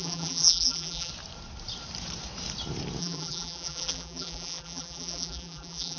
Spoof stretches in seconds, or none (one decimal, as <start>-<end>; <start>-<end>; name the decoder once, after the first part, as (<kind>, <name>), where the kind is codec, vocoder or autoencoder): 0.0-1.1 (vocoder, BigVGAN v2); 3.0-6.0